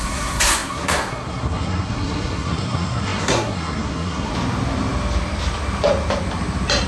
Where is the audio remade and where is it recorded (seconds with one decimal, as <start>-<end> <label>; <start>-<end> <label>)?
0.0-4.3 remade; 4.3-6.9 recorded